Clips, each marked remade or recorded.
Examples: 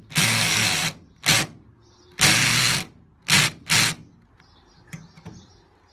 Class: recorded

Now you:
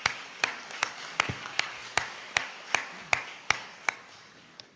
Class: remade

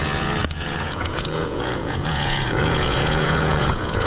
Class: remade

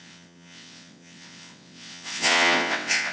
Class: remade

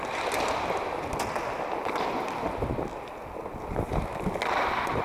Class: recorded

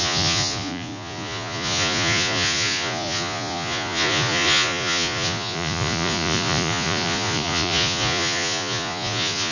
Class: remade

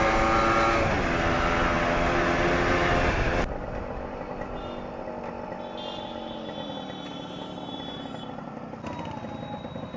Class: recorded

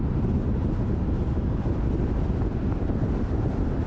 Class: recorded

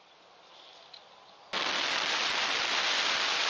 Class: recorded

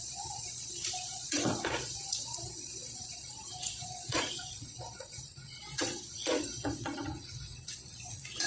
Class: remade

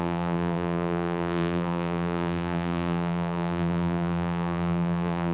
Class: remade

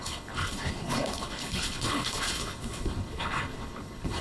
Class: remade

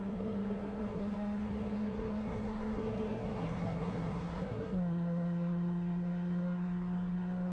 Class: remade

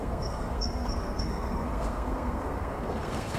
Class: remade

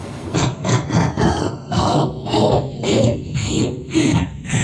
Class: remade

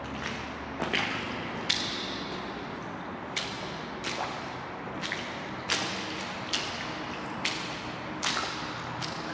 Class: recorded